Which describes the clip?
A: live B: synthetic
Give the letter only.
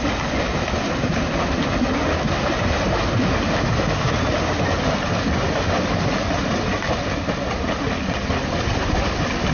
A